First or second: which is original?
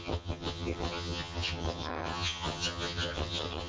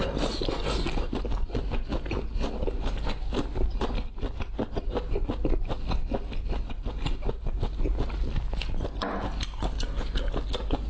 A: second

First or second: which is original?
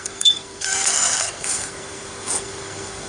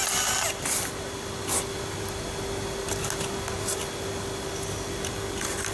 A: second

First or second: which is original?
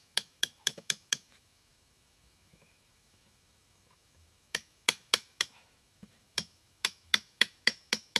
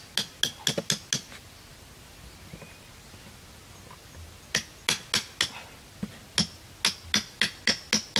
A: second